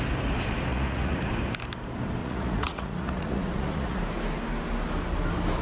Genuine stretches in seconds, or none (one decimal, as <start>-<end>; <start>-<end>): 0.0-0.7; 1.3-2.2; 4.0-5.6